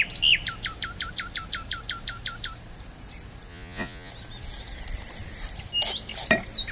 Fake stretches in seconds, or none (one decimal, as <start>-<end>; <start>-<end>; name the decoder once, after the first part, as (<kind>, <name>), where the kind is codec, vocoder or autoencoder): 3.5-4.1 (vocoder, Vocos)